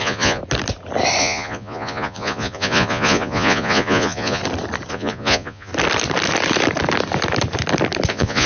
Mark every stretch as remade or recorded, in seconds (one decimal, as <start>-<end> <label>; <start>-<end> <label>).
0.0-0.4 remade; 0.4-1.2 recorded; 1.2-4.4 remade; 4.4-4.9 recorded; 4.9-5.7 remade; 5.7-8.1 recorded; 8.1-8.5 remade